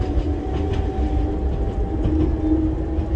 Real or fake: real